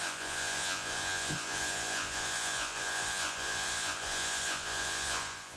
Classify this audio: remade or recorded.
remade